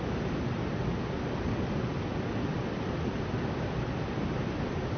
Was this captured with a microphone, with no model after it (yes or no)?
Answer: yes